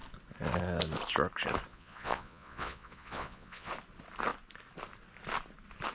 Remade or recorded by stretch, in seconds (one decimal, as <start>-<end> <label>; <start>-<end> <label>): 0.0-1.7 recorded; 1.7-3.7 remade; 3.7-5.9 recorded